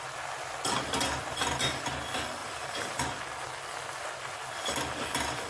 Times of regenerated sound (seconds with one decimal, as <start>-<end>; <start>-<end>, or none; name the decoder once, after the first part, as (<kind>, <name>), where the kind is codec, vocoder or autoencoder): 2.4-3.0 (vocoder, BigVGAN v2)